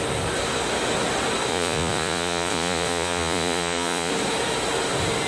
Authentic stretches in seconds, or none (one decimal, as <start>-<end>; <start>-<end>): 0.0-1.5; 4.1-5.3